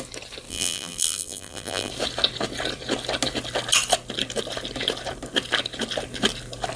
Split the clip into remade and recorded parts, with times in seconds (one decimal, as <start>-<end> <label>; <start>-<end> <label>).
0.0-0.5 recorded; 0.5-1.9 remade; 1.9-6.8 recorded